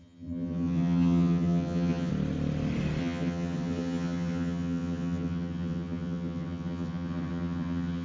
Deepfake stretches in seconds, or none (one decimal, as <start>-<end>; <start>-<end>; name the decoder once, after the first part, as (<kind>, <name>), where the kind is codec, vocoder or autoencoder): 0.0-2.1 (vocoder, HiFi-GAN); 3.0-8.0